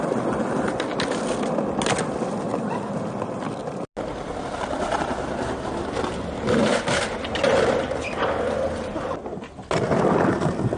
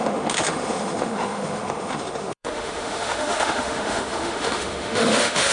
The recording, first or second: first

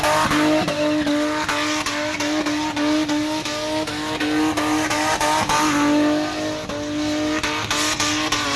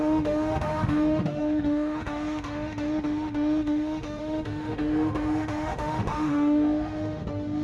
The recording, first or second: first